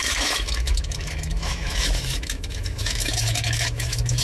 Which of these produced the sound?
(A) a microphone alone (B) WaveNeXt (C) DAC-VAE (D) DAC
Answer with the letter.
C